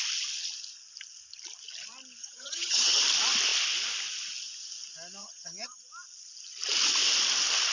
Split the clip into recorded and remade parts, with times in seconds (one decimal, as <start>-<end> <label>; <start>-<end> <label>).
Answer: 0.0-2.2 recorded; 2.2-3.0 remade; 3.0-5.2 recorded; 5.2-5.8 remade; 5.8-7.7 recorded